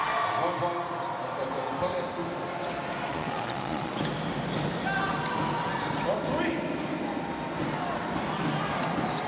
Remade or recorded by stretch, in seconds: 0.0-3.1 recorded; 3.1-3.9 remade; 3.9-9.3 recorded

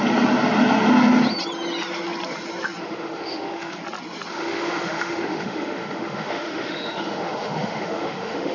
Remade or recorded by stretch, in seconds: 0.0-2.8 recorded; 2.8-3.8 remade; 3.8-4.3 recorded; 4.3-8.5 remade